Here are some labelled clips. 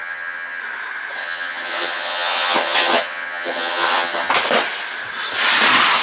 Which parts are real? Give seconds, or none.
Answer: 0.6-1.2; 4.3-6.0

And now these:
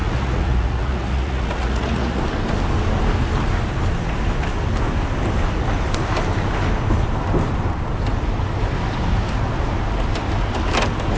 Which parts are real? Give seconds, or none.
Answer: 2.2-11.2

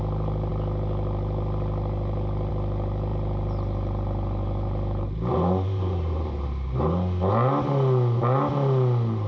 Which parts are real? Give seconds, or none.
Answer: 0.0-3.1; 6.8-9.3

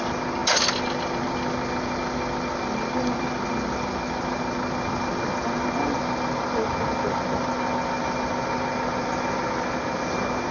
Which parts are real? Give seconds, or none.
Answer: 0.0-10.5